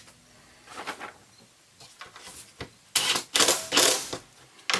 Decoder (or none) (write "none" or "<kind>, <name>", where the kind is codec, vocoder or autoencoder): none